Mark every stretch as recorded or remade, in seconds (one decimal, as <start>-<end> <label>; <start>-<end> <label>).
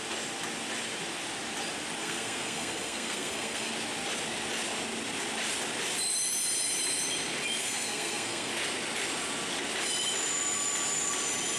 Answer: 0.0-2.0 recorded; 2.0-3.7 remade; 3.7-7.6 recorded; 7.6-8.5 remade; 8.5-11.6 recorded